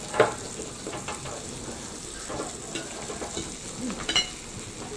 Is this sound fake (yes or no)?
no